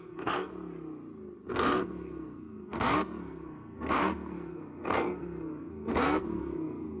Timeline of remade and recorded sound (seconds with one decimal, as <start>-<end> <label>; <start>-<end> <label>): 0.0-0.5 remade; 0.5-1.5 recorded; 1.5-7.0 remade